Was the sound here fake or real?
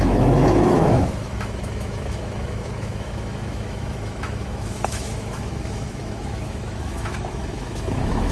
fake